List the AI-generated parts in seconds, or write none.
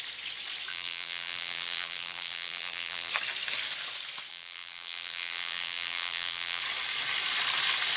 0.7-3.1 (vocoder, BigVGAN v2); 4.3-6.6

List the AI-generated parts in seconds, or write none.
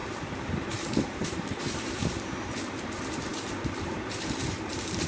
0.0-5.1 (vocoder, BigVGAN v2)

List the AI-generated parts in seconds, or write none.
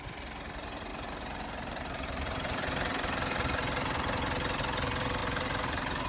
0.9-4.6 (vocoder, BigVGAN v2); 5.2-6.1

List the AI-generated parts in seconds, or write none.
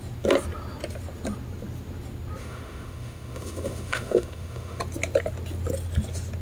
2.4-4.8 (autoencoder, DAC-VAE)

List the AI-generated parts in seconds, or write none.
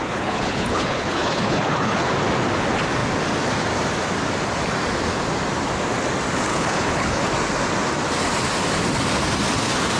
0.0-2.1 (codec, HILCodec); 6.5-7.2